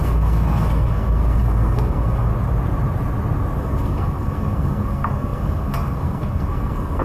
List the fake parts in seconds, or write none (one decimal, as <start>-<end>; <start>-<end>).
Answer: 0.0-2.3; 3.6-7.0